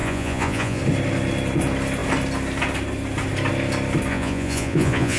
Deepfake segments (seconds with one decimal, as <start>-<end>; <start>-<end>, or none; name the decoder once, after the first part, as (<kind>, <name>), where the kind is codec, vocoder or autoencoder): 0.0-0.8 (vocoder, Vocos); 4.1-5.2